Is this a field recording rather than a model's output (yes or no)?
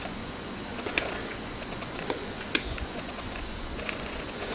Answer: no